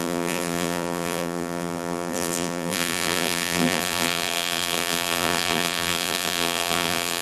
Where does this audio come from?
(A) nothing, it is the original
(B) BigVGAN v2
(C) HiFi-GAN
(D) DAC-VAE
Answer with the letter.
B